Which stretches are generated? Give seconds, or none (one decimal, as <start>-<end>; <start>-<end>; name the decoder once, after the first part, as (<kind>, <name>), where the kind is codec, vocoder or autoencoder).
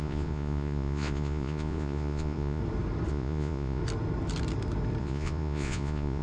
0.0-2.6 (vocoder, Vocos); 3.1-3.8; 5.0-6.2